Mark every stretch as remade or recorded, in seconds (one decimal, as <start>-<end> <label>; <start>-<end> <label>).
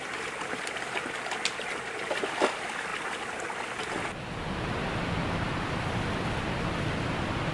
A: 0.0-7.5 recorded